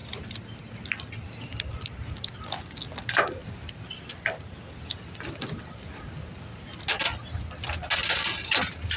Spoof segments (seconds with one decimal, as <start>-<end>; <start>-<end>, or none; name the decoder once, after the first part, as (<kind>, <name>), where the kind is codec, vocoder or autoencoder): none